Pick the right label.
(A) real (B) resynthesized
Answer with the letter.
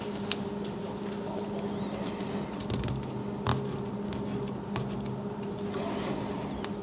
A